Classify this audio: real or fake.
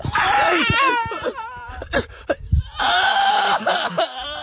fake